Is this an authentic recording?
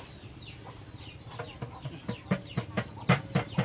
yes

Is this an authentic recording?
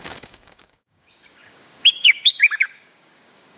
no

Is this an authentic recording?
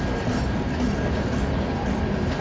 yes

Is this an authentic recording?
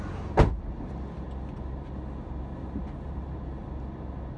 yes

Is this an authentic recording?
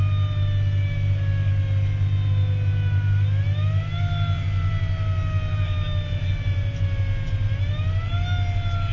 yes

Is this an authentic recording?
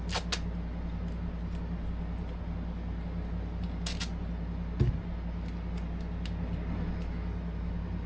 yes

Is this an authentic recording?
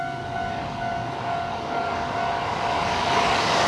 no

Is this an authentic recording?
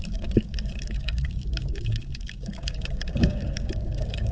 no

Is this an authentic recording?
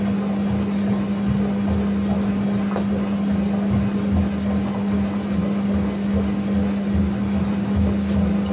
yes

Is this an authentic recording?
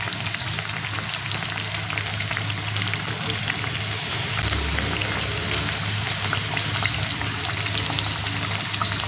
yes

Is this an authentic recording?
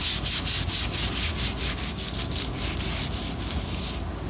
yes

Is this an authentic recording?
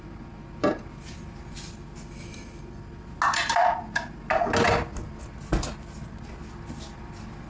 yes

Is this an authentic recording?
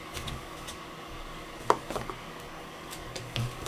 no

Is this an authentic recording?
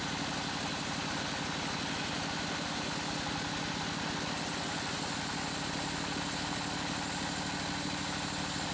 yes